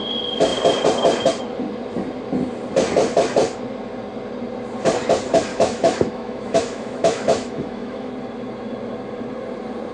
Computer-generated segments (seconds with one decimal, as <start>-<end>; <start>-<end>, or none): 5.5-8.1